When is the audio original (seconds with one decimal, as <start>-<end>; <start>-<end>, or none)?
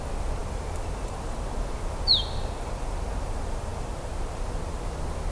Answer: 0.0-5.3